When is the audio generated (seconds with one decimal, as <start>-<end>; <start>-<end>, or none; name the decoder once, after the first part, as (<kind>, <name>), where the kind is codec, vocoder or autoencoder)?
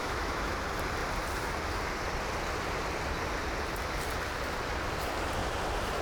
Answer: 0.0-0.6 (autoencoder, DAC-VAE)